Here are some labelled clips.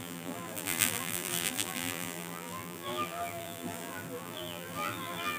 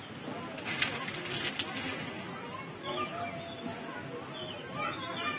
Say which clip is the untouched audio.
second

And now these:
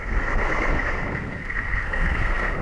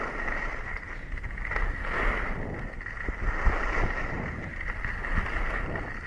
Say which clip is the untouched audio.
second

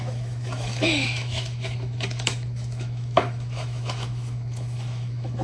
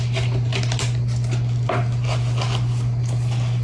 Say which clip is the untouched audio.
second